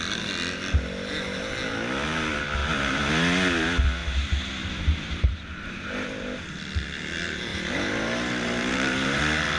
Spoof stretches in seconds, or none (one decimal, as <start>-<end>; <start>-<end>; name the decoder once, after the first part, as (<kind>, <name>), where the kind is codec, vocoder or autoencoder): 2.6-3.1 (vocoder, BigVGAN v2); 4.0-6.6; 7.5-9.2